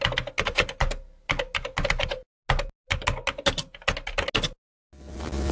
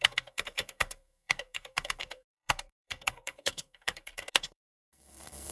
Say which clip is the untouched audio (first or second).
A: first